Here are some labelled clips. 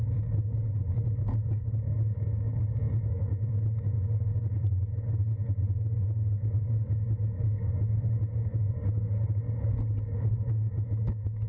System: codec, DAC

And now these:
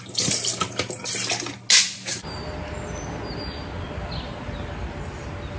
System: none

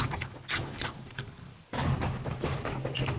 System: none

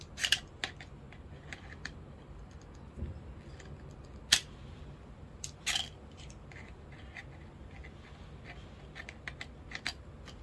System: none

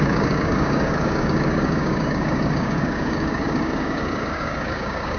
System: codec, DAC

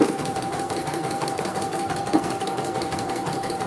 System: codec, SNAC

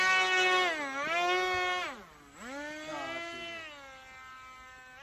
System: none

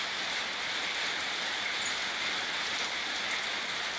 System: none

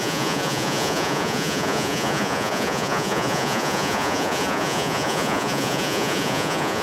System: vocoder, Vocos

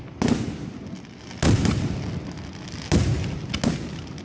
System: none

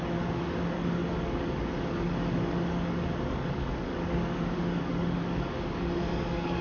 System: codec, DAC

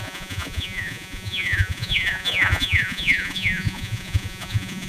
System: vocoder, Vocos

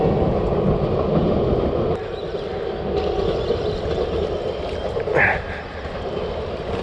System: none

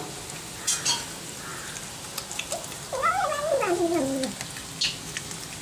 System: none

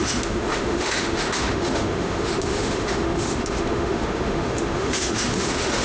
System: autoencoder, DAC-VAE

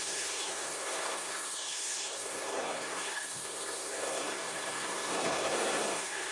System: codec, SNAC